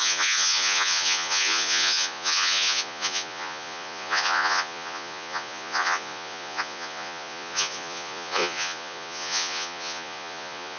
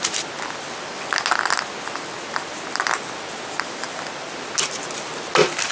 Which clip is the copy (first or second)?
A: first